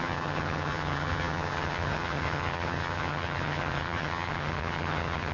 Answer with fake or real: fake